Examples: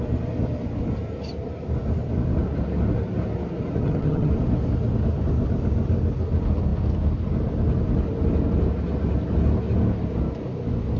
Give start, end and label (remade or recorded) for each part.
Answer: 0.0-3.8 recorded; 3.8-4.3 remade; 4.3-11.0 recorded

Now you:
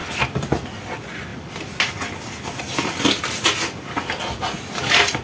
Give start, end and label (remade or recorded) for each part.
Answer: 0.0-5.2 recorded

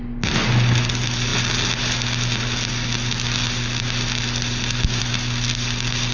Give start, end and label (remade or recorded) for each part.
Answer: 0.0-6.1 recorded

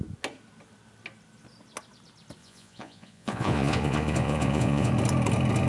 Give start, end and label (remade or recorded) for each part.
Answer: 0.0-2.4 recorded; 2.4-4.9 remade; 4.9-5.7 recorded

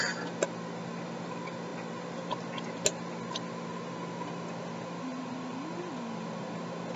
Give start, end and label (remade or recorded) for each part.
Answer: 0.0-7.0 recorded